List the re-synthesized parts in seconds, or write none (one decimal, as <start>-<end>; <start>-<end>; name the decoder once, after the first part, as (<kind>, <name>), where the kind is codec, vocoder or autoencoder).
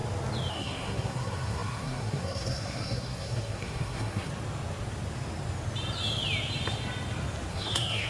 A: 0.5-4.3 (codec, SNAC); 7.5-8.1